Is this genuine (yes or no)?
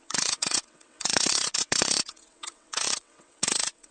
no